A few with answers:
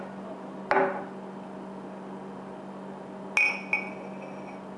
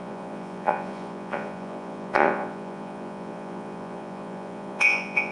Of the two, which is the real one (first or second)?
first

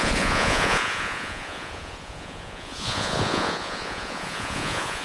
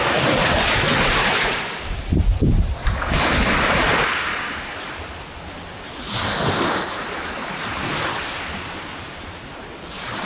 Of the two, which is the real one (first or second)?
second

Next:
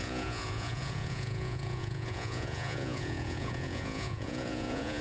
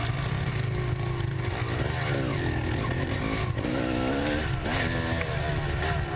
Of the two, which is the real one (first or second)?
second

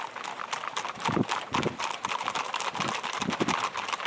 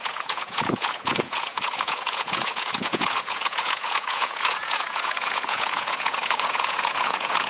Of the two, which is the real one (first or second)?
first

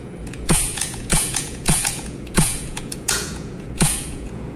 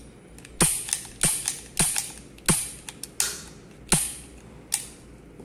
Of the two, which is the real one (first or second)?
second